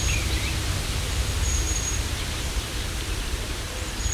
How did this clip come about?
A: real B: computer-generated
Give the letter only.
B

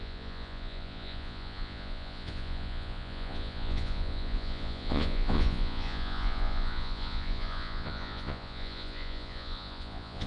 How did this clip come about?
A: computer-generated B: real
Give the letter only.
A